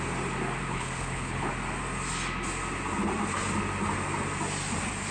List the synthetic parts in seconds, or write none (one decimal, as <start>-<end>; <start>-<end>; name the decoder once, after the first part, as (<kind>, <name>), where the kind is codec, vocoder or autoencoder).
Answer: 0.7-1.5 (codec, HILCodec)